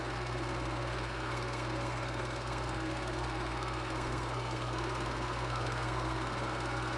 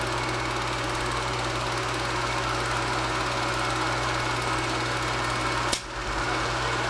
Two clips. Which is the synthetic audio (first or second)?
first